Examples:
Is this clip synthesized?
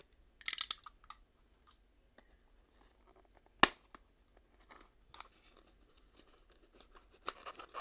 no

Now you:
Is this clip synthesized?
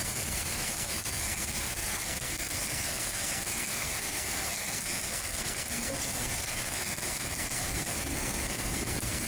yes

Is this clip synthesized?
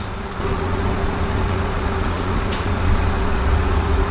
yes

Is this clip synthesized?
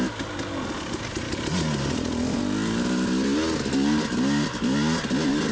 no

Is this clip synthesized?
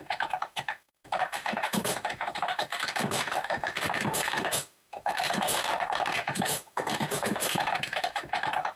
yes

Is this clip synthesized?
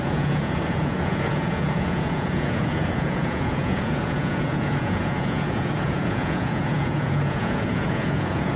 yes